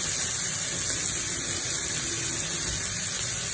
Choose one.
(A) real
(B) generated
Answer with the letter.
A